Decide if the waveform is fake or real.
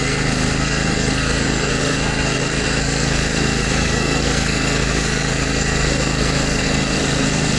fake